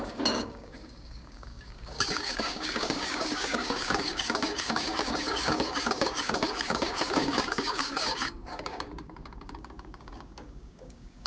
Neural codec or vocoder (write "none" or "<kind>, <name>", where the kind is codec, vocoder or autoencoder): codec, DAC